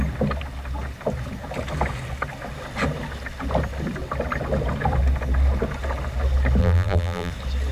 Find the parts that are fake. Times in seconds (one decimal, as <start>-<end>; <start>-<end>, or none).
6.6-7.3